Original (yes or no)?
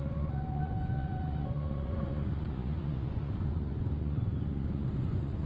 no